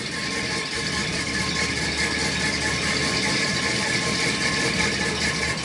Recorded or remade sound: recorded